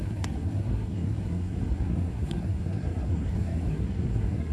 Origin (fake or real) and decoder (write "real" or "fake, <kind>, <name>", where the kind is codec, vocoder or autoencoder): fake, codec, SNAC